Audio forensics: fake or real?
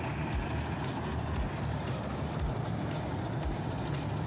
real